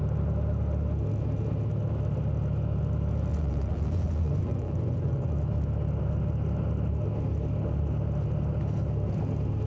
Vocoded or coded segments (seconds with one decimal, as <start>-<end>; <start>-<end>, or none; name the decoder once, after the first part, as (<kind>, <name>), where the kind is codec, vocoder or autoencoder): 3.3-5.3 (vocoder, Vocos)